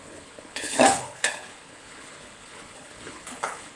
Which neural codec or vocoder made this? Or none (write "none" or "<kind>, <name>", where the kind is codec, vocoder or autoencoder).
codec, HILCodec